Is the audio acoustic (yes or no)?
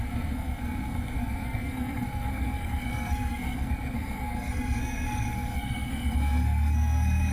no